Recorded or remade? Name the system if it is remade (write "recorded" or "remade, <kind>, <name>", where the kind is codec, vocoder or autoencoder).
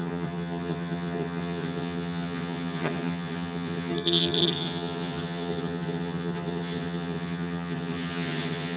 remade, vocoder, HiFi-GAN